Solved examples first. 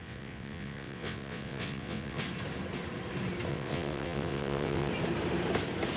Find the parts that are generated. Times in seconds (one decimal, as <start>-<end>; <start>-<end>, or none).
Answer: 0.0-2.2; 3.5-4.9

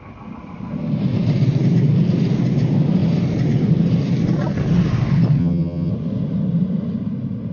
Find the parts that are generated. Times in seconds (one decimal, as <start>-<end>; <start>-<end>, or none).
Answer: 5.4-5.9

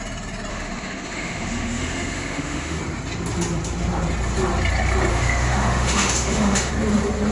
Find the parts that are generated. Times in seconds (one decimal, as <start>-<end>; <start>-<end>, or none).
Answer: 0.5-2.8; 5.1-6.7